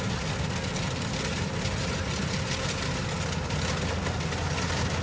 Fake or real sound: real